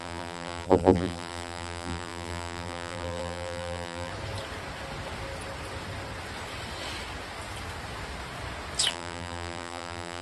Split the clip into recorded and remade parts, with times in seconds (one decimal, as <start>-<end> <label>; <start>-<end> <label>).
0.0-4.1 remade; 4.1-8.9 recorded; 8.9-10.2 remade